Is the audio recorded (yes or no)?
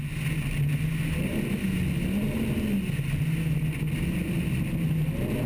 yes